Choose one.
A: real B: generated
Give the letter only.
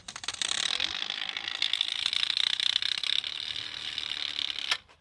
A